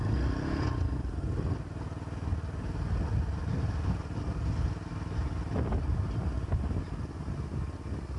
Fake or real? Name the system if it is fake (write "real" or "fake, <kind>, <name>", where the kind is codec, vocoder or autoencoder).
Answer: real